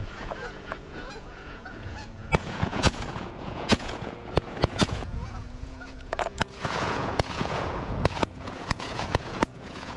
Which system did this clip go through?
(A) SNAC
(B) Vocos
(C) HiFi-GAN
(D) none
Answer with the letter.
B